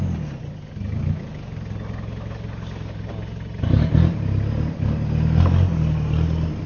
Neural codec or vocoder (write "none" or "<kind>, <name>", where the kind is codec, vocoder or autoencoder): none